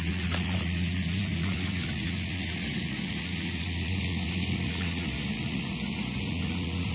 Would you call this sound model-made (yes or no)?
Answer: yes